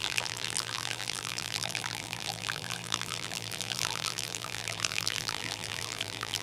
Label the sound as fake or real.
fake